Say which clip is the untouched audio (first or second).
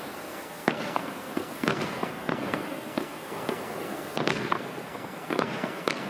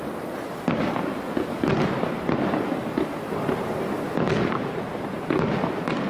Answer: second